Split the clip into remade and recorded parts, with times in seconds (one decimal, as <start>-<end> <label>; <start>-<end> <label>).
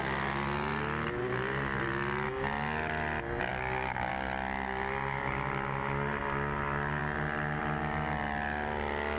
0.0-9.2 recorded